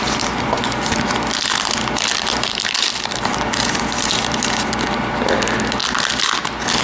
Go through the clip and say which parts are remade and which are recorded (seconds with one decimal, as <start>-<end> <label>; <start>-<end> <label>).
0.0-6.8 recorded

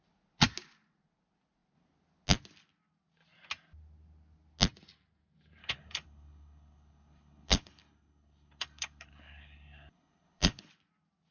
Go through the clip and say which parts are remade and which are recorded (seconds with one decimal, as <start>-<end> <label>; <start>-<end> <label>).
0.0-5.6 recorded; 5.6-10.7 remade; 10.7-11.3 recorded

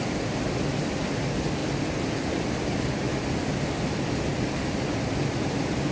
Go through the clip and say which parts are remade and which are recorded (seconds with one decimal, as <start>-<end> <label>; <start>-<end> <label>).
0.0-5.9 recorded

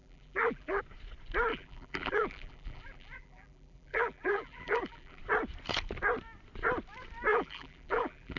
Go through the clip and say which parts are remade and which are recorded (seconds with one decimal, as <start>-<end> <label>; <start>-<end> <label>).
0.0-0.8 remade; 0.8-1.5 recorded; 1.5-5.2 remade; 5.2-7.3 recorded; 7.3-8.4 remade